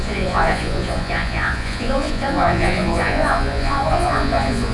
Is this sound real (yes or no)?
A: no